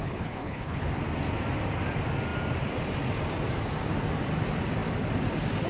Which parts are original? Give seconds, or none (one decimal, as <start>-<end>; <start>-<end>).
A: 0.9-5.7